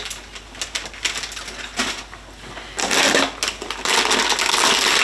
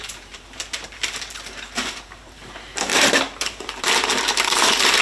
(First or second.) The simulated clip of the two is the second